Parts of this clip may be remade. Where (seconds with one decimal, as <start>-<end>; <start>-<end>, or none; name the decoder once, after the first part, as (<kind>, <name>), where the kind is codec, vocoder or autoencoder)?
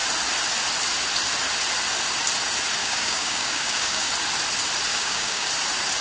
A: 2.8-4.1 (codec, DAC); 4.9-5.5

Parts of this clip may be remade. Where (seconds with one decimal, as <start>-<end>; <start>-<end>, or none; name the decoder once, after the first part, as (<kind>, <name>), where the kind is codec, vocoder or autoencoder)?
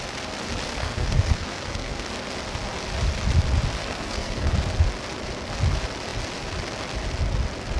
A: 0.7-2.0 (codec, SNAC); 3.8-4.5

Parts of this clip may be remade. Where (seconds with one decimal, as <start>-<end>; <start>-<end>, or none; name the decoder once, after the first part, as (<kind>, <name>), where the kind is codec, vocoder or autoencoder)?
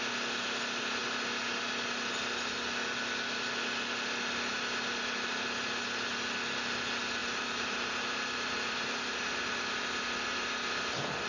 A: 7.2-9.2 (vocoder, BigVGAN v2)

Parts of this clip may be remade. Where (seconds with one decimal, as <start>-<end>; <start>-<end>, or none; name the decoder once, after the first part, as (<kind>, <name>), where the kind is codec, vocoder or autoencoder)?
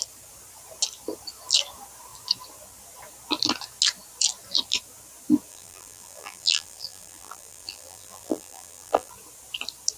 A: 5.5-9.1 (vocoder, BigVGAN v2)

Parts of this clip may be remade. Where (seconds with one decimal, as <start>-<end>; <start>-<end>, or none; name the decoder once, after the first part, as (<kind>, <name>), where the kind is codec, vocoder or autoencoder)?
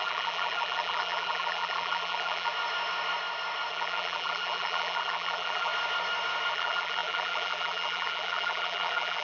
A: 0.0-2.5 (vocoder, BigVGAN v2); 3.7-5.7; 6.5-9.2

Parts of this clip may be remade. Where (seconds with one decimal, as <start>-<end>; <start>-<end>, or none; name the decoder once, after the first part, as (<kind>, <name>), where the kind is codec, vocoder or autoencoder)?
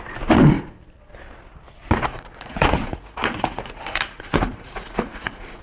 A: 2.1-5.6 (vocoder, Vocos)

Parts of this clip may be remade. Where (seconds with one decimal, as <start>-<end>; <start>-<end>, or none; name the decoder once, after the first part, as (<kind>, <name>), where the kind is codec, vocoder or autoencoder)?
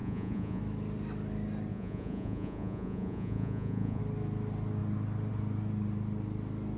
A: 0.0-0.6 (vocoder, Vocos); 1.7-4.0